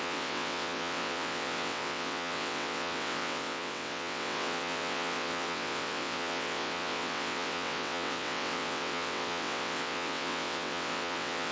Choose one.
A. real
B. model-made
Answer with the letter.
B